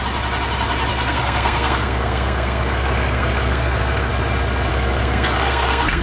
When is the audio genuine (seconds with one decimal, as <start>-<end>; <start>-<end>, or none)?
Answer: 0.0-0.9; 4.1-4.7